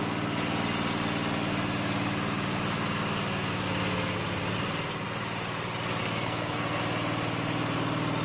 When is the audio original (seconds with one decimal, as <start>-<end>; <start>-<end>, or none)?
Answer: 0.0-6.0; 6.8-8.2